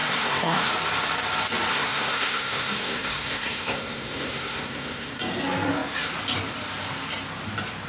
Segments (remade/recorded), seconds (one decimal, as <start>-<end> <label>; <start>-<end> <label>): 0.0-0.7 remade; 0.7-1.7 recorded; 1.7-5.2 remade; 5.2-7.9 recorded